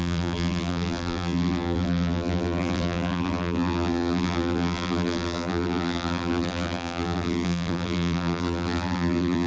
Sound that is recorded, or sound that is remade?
remade